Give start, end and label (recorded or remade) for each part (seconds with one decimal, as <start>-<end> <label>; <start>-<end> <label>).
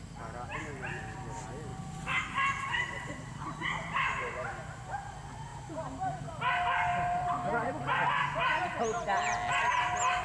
0.0-1.7 recorded; 1.7-5.1 remade; 5.1-5.5 recorded; 5.5-6.2 remade; 6.2-6.9 recorded; 6.9-7.5 remade; 7.5-10.2 recorded